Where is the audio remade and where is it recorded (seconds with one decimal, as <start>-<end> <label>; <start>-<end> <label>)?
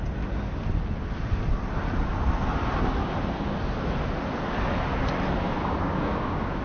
0.0-5.8 recorded; 5.8-6.6 remade